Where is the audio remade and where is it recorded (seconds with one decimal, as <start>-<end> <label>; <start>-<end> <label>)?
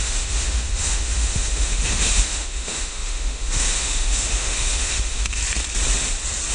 0.0-5.4 remade; 5.4-6.5 recorded